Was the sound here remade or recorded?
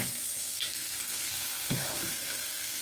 remade